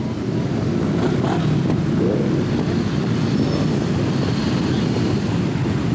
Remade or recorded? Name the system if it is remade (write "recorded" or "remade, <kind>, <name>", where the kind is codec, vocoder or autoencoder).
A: recorded